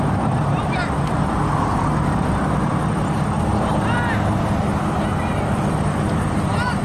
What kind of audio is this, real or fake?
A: fake